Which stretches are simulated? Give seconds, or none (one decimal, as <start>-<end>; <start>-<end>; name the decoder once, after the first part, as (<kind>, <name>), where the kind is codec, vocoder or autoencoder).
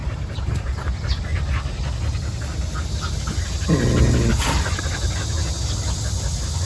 0.0-0.7 (vocoder, BigVGAN v2)